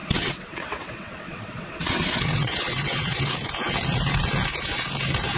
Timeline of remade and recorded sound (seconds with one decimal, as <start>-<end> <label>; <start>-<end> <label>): 0.0-3.2 remade; 3.2-5.4 recorded